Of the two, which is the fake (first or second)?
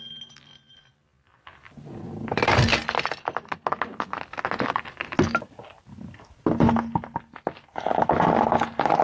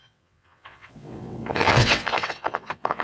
second